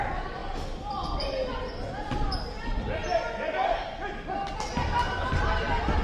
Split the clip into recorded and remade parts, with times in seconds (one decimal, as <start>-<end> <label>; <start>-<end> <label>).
0.0-6.0 recorded